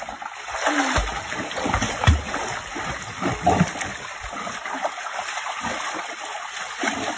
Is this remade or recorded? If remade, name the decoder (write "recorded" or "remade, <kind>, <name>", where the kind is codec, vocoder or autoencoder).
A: recorded